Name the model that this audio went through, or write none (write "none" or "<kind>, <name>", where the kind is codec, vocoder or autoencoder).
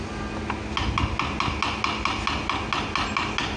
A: none